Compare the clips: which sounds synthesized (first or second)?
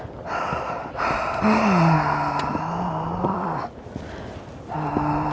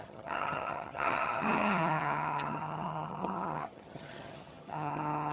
second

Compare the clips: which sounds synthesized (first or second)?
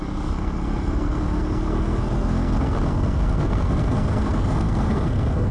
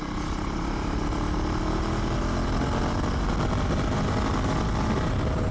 first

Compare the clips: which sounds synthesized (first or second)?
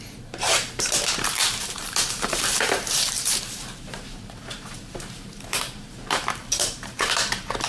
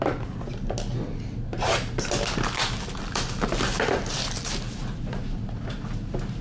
first